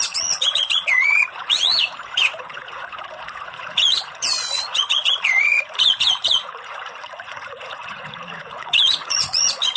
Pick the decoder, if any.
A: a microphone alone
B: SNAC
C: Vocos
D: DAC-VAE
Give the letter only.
C